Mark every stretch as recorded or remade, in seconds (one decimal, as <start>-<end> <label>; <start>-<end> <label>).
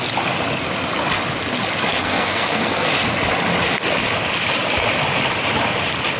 0.0-1.9 recorded; 1.9-2.9 remade; 2.9-6.2 recorded